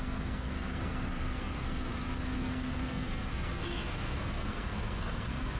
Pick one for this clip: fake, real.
fake